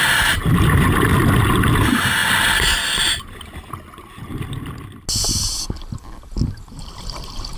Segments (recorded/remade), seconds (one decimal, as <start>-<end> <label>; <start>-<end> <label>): 0.0-7.6 recorded